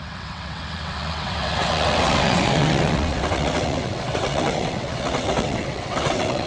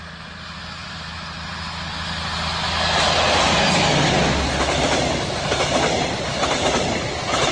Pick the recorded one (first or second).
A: second